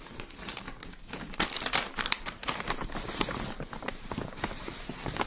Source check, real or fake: fake